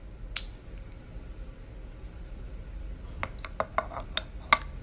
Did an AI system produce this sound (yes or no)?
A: no